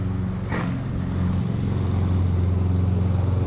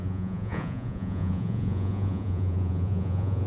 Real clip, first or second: first